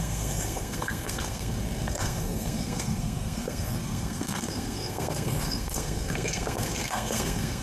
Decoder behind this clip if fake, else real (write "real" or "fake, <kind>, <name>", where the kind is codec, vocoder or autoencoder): fake, codec, SNAC